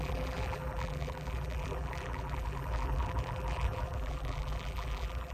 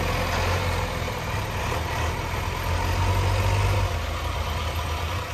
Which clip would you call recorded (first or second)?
second